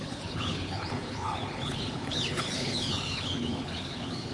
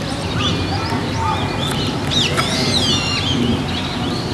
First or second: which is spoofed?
first